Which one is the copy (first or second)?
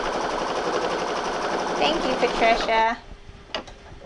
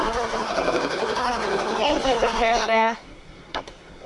second